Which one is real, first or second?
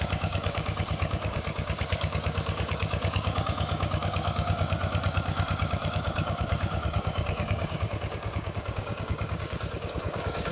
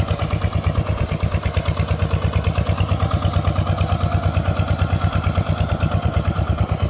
second